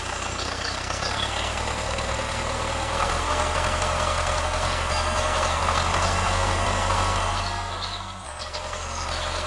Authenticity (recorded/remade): remade